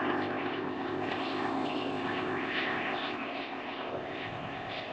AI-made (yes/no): yes